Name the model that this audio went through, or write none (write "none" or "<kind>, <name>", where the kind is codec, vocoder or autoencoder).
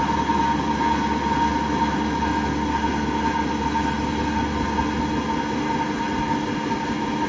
none